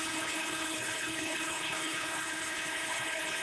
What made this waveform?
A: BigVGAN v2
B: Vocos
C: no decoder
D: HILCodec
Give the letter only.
D